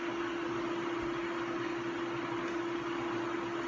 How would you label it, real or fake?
real